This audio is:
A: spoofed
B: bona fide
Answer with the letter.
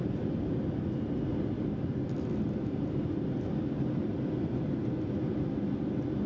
B